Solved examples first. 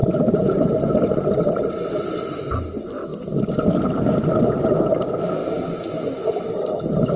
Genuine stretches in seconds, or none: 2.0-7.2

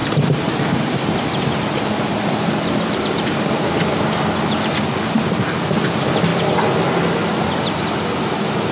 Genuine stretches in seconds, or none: 1.4-2.1; 3.7-8.7